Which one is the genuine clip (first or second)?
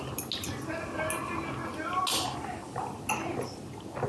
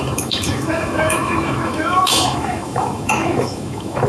first